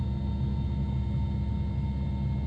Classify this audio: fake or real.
real